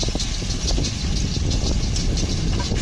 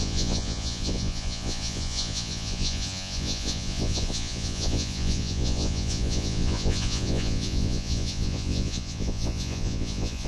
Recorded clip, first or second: first